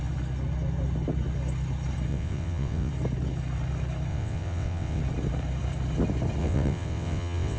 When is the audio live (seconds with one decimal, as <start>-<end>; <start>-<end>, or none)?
0.0-2.1; 2.9-4.1; 5.0-6.4